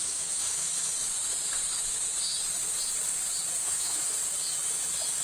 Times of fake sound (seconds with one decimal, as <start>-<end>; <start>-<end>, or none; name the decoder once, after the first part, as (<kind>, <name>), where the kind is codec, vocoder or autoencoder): 0.0-0.7 (autoencoder, DAC-VAE); 3.6-4.2